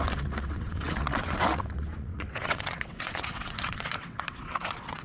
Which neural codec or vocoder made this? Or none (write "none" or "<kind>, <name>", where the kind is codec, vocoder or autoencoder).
vocoder, WaveNeXt